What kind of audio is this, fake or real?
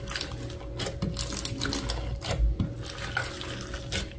real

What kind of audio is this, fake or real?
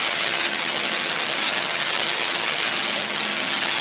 fake